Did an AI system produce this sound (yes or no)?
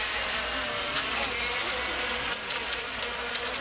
no